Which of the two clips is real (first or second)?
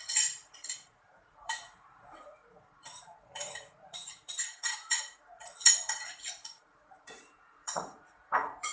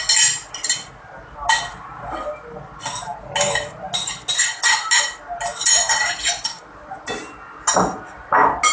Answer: second